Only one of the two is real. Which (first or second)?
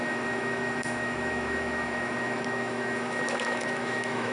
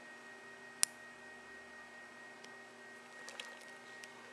second